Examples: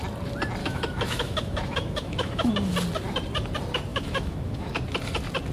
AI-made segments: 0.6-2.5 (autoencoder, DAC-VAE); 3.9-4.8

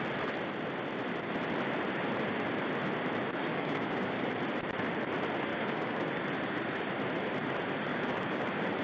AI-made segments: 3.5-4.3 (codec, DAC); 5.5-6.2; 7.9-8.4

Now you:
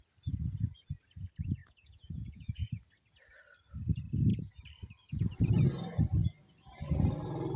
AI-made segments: 1.6-2.7 (vocoder, Vocos)